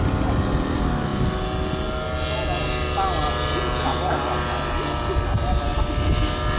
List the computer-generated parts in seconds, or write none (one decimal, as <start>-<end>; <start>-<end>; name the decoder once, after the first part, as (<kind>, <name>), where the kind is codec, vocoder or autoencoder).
none